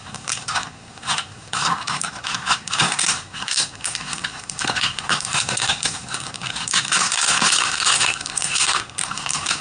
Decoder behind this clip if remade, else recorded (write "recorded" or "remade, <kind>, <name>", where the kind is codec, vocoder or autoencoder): remade, codec, SNAC